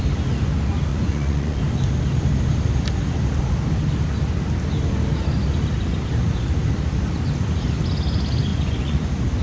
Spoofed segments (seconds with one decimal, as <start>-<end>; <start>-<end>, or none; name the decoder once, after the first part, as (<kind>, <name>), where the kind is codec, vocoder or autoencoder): 0.9-1.6 (vocoder, Vocos); 8.5-9.0